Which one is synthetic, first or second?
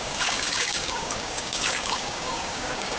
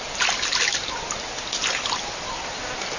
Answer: first